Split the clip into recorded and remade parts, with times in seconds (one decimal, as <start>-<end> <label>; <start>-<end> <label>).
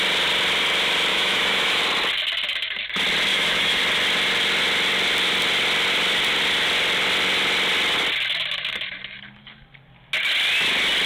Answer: 0.0-1.1 recorded; 1.1-1.8 remade; 1.8-3.3 recorded; 3.3-3.8 remade; 3.8-11.1 recorded